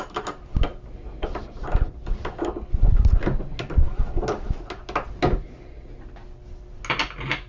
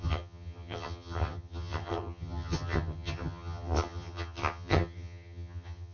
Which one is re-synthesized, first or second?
second